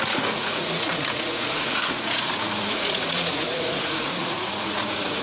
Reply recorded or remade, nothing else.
remade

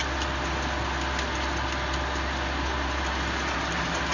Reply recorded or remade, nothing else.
recorded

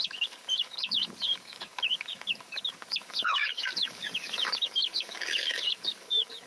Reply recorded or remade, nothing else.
remade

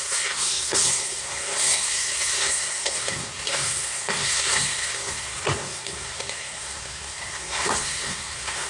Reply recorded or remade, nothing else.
remade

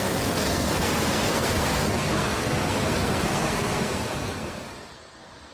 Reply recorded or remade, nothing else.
remade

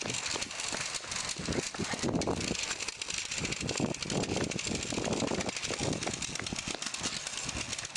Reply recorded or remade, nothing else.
recorded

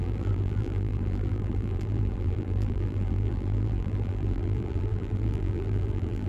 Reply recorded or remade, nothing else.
remade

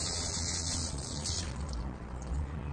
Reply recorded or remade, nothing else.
remade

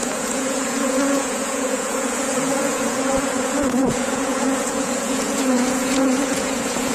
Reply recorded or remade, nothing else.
remade